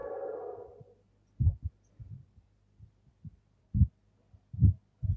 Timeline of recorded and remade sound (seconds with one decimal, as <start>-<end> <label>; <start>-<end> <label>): 0.0-5.2 recorded